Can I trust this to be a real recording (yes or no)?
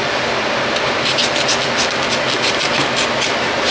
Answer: yes